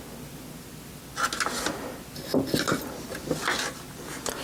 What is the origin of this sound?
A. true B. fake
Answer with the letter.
A